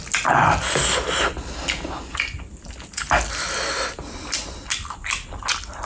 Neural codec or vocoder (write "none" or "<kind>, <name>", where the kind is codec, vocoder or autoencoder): none